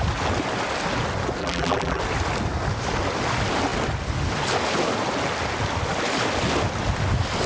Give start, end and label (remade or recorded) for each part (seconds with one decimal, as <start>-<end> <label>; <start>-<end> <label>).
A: 0.0-1.4 recorded; 1.4-2.0 remade; 2.0-7.5 recorded